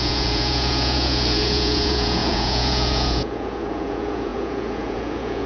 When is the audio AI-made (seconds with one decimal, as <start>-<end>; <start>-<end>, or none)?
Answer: 0.0-5.5